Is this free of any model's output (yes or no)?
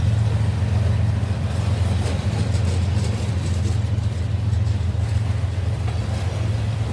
yes